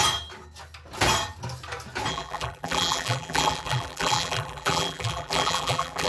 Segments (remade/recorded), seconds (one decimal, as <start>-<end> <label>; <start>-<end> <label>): 0.0-2.1 recorded; 2.1-6.1 remade